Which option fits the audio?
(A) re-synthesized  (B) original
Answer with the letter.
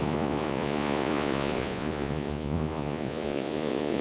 A